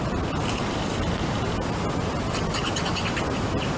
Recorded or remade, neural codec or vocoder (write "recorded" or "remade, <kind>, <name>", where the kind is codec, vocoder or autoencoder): recorded